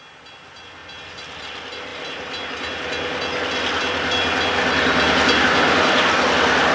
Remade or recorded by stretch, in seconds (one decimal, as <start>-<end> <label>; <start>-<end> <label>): 0.0-6.7 recorded